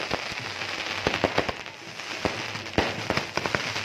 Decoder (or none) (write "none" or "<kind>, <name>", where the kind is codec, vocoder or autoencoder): none